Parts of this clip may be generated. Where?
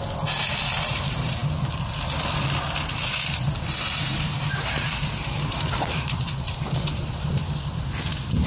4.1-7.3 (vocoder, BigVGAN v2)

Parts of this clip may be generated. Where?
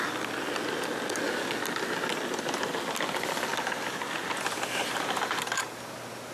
none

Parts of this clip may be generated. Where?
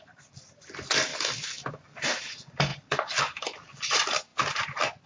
0.0-1.1 (vocoder, BigVGAN v2); 2.1-4.3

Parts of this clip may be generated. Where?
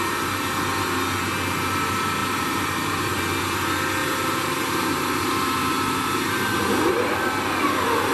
2.2-3.2 (vocoder, BigVGAN v2); 4.0-7.1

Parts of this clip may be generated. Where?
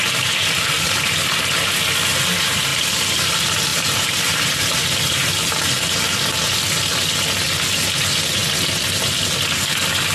3.7-6.0 (vocoder, BigVGAN v2)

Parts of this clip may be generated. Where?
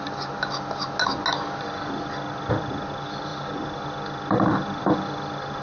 3.3-3.8 (vocoder, BigVGAN v2)